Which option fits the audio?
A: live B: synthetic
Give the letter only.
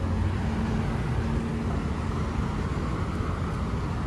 A